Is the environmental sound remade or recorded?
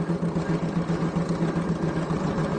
recorded